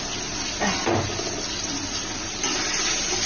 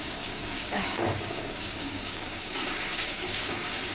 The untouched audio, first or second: first